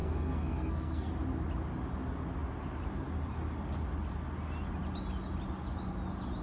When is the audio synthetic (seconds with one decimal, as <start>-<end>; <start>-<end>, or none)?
0.0-1.1